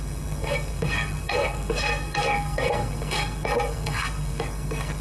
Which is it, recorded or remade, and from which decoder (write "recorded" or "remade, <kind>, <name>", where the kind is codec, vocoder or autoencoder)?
remade, codec, SNAC